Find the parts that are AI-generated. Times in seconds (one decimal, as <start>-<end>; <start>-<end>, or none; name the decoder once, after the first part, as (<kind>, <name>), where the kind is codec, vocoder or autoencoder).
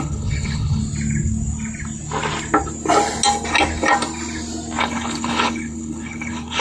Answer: 0.0-0.8 (codec, HILCodec); 4.8-6.6